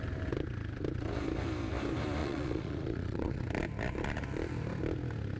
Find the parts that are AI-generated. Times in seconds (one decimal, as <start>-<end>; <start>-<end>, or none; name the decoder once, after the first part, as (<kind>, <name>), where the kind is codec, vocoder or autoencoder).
2.2-3.4 (vocoder, Vocos)